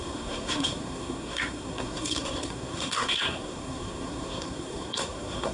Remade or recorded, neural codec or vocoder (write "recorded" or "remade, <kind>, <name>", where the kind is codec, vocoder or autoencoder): remade, codec, SNAC